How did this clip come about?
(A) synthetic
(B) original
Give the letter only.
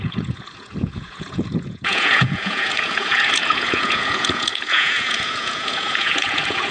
A